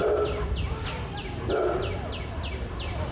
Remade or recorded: recorded